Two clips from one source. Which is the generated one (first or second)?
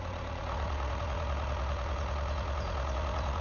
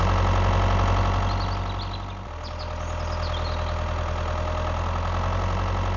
first